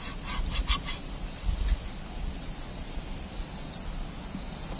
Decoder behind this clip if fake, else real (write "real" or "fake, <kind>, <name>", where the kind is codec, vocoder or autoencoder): real